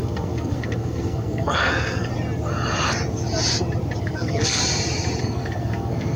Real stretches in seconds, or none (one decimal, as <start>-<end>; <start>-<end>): 2.1-4.0; 4.6-5.2